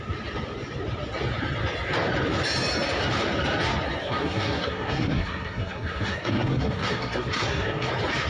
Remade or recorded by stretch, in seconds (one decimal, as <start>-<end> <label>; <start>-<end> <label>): 0.0-4.0 recorded; 4.0-7.9 remade; 7.9-8.3 recorded